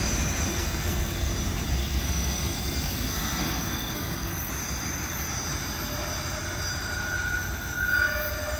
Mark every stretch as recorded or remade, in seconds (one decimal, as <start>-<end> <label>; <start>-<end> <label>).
0.0-0.5 recorded; 0.5-1.3 remade; 1.3-1.8 recorded; 1.8-4.5 remade; 4.5-8.6 recorded